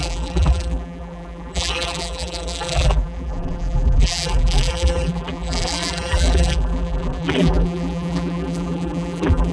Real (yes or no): no